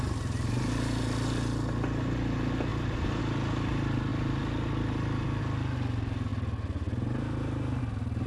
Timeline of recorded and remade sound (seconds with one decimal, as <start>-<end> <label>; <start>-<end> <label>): 0.0-8.3 recorded